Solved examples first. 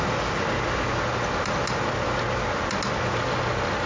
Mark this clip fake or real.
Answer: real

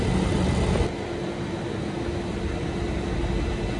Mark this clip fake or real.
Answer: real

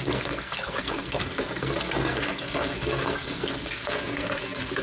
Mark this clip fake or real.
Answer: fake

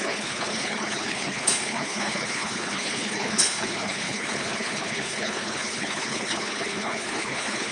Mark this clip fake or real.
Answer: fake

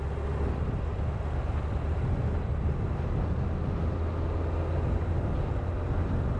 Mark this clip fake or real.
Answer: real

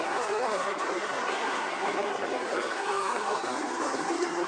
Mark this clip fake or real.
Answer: fake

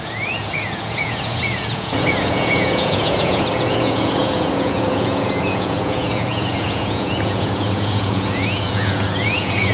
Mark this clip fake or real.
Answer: fake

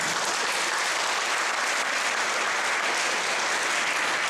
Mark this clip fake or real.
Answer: real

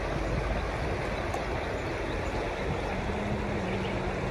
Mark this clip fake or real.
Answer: real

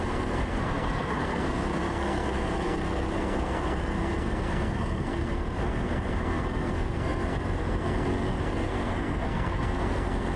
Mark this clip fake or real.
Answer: fake